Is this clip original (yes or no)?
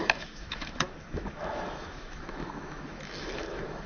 no